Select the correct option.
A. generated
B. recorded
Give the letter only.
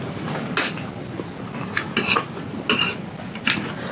B